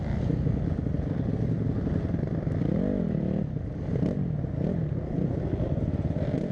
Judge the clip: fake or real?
real